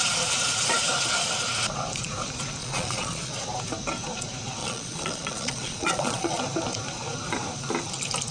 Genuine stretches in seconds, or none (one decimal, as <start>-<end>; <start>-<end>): 0.0-2.6; 3.3-4.6; 6.4-8.3